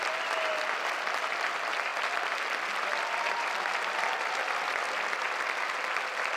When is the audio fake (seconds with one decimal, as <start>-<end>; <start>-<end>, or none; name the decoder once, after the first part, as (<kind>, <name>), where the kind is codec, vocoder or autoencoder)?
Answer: none

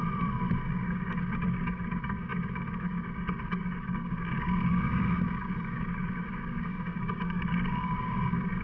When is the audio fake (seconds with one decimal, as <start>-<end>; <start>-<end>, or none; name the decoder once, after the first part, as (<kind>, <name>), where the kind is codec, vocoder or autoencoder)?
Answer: 0.7-8.6 (codec, DAC)

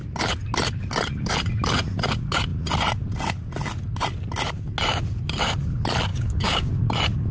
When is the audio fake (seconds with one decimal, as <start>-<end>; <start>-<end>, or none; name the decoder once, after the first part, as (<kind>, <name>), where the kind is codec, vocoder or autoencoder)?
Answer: 6.1-6.7 (codec, DAC)

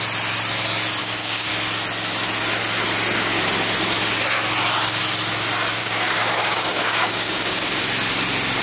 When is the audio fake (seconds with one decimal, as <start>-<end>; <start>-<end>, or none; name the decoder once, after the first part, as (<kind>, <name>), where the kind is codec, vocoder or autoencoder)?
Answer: 1.0-1.5 (codec, DAC); 5.8-7.8